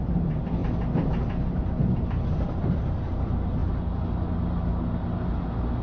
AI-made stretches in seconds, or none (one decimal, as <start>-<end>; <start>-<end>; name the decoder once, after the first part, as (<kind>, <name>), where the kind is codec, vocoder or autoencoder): none